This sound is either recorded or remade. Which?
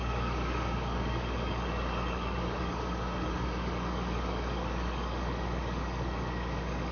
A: remade